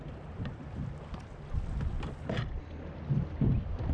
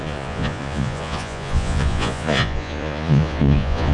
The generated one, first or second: second